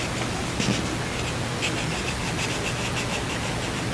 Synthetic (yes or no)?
no